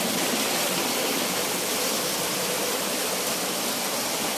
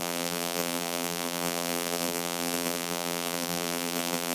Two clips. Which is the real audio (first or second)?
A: first